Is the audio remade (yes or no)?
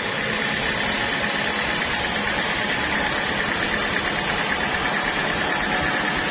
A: no